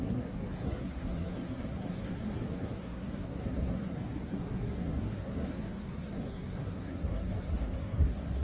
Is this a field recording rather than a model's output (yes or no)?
no